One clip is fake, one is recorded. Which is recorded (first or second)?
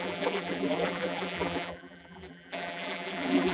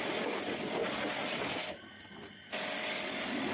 second